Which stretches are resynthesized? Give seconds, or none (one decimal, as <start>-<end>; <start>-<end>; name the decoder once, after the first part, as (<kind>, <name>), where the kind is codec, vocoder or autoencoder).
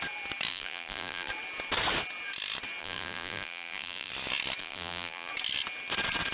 0.5-1.3 (vocoder, BigVGAN v2); 2.8-4.1; 4.6-5.3